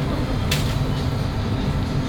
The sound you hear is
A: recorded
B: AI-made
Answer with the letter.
A